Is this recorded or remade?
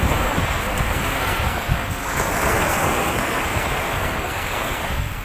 remade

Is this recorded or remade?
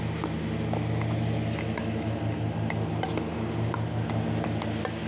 recorded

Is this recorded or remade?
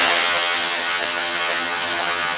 remade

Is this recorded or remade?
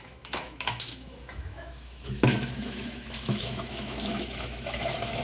remade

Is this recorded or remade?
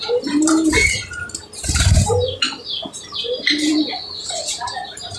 remade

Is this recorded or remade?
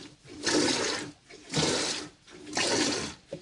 recorded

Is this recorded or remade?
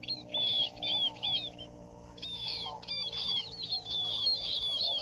remade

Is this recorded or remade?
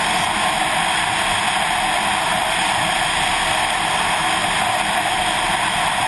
recorded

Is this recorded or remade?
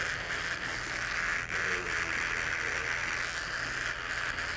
recorded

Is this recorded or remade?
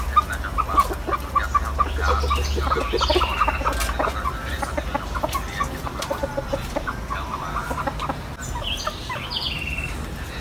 recorded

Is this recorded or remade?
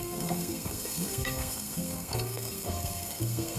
remade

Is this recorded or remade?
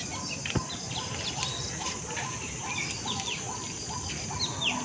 recorded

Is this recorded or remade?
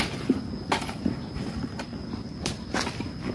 recorded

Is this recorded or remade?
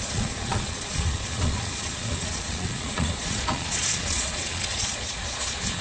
remade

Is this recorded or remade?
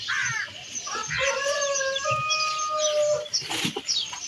recorded